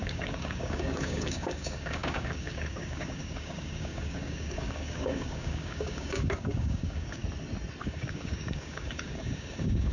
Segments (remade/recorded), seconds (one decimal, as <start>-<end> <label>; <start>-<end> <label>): 0.0-7.2 remade; 7.2-7.8 recorded; 7.8-9.9 remade